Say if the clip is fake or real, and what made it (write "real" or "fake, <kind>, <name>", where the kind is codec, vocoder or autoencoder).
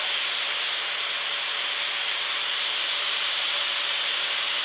real